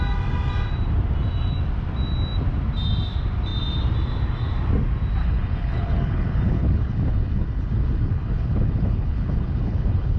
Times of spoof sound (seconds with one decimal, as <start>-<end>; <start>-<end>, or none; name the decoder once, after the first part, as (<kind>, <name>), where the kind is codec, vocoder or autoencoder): 5.2-10.2 (codec, HILCodec)